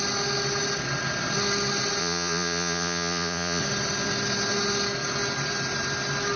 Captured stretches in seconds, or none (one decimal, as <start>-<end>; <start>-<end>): 0.0-2.0; 3.6-6.4